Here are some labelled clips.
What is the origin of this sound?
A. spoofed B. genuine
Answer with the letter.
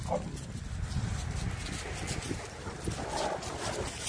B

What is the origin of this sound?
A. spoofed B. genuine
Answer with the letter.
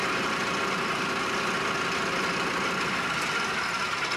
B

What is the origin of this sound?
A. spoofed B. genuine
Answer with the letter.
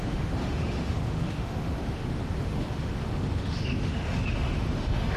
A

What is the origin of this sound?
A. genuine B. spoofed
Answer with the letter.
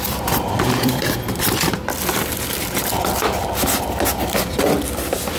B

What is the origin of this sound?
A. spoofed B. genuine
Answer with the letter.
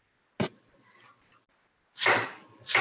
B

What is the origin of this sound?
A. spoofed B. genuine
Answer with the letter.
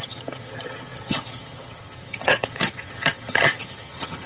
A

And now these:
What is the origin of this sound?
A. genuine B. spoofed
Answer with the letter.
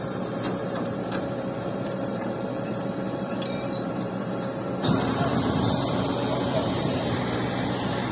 B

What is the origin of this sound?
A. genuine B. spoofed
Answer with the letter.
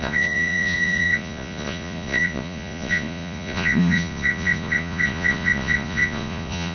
B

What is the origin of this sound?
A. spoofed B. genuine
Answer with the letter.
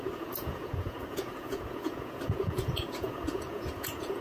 A